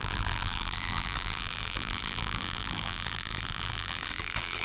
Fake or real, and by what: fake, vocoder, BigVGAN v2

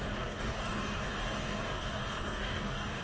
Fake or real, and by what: fake, codec, DAC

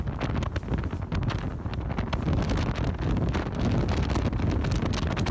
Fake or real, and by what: real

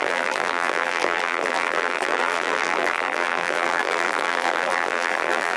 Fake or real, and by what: fake, vocoder, BigVGAN v2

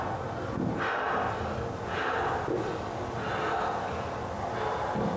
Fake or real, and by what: real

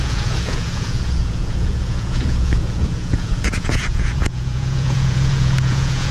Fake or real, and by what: fake, vocoder, Vocos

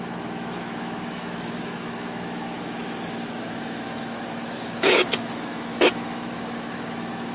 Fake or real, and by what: fake, autoencoder, DAC-VAE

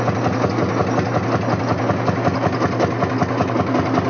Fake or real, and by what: real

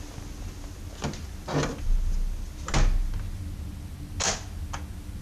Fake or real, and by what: real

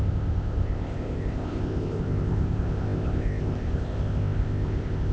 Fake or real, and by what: fake, codec, ZipCodec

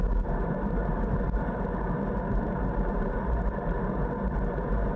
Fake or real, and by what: fake, vocoder, BigVGAN v2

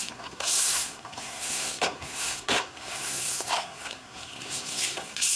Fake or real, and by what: fake, codec, SNAC